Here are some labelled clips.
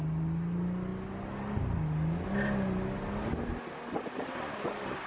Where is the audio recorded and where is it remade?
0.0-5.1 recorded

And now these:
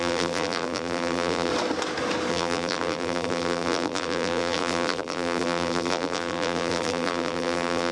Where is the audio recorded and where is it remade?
0.0-1.5 remade; 1.5-2.3 recorded; 2.3-7.9 remade

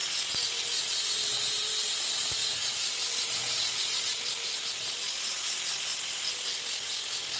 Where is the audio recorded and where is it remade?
0.0-4.1 recorded; 4.1-4.7 remade; 4.7-7.4 recorded

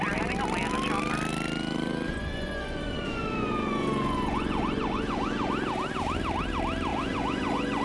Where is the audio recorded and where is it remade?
0.0-2.1 recorded; 2.1-5.5 remade; 5.5-6.9 recorded; 6.9-7.8 remade